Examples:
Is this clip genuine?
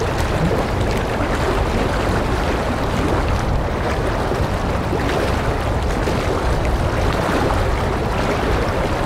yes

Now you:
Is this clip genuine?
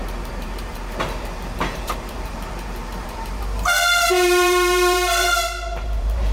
no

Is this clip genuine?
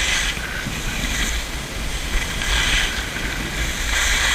yes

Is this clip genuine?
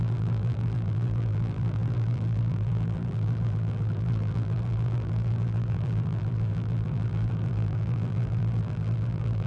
no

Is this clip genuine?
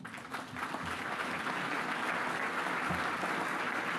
yes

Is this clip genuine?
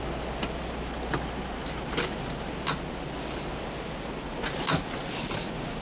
yes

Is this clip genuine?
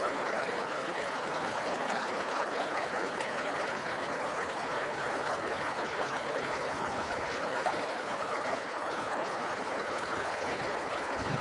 no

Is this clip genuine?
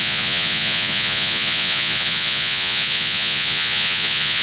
no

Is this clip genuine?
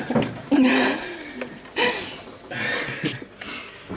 yes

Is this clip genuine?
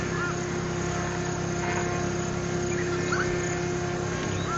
yes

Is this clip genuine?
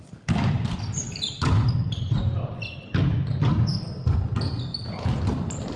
yes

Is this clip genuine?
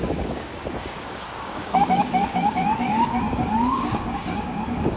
no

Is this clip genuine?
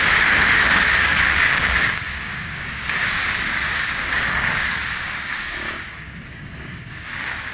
no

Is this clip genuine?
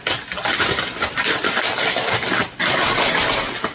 yes